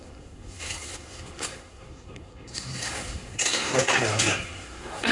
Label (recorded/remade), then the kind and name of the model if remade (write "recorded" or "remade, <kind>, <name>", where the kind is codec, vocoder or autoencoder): remade, codec, SNAC